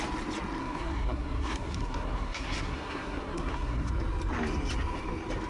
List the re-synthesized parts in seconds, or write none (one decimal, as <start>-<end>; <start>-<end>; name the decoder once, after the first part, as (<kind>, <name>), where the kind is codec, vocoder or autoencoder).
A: 0.6-3.9 (codec, SNAC)